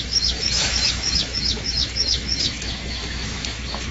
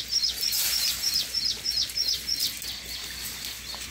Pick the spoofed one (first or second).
first